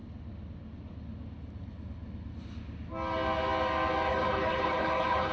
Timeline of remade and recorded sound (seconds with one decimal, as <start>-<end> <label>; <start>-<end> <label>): 0.0-4.1 recorded; 4.1-5.3 remade